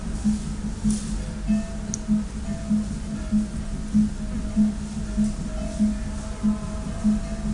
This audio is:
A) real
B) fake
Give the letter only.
A